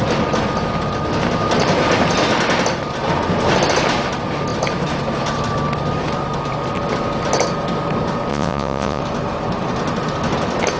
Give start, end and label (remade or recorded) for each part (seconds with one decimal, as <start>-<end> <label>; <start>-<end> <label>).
0.0-8.3 recorded; 8.3-9.0 remade; 9.0-10.8 recorded